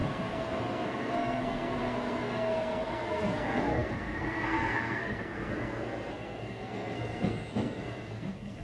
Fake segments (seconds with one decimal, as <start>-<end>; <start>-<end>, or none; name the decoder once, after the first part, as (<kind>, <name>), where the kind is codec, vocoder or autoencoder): 0.0-8.6 (codec, SNAC)